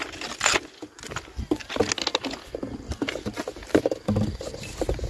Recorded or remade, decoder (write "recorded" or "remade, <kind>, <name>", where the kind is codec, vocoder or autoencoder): recorded